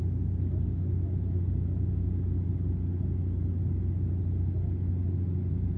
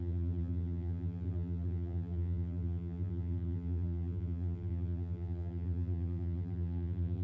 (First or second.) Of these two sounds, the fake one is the second